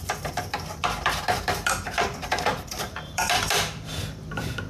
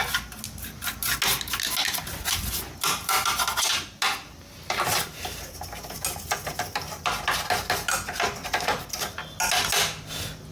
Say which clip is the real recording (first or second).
second